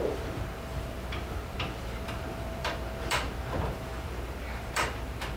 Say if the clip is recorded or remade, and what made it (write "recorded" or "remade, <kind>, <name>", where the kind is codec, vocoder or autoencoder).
remade, vocoder, BigVGAN v2